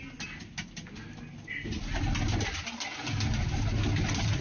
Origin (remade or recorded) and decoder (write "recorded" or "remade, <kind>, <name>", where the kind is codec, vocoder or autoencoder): recorded